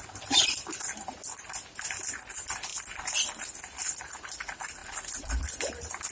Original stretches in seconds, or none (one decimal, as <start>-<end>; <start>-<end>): 0.0-4.8; 5.4-6.1